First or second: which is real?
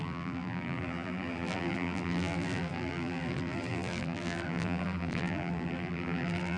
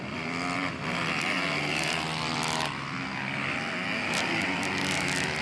second